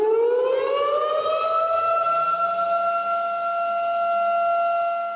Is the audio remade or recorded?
recorded